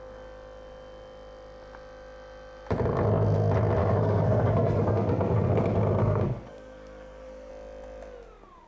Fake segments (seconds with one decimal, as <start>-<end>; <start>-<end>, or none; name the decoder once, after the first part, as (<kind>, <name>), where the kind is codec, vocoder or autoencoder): 3.8-5.6 (codec, SNAC); 6.0-7.5